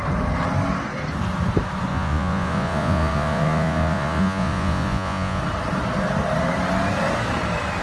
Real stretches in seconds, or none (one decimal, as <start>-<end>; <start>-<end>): 0.0-1.9; 5.4-7.8